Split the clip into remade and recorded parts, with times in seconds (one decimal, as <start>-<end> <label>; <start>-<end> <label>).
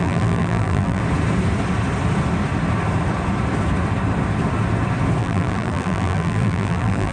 0.0-1.0 remade; 1.0-5.2 recorded; 5.2-7.1 remade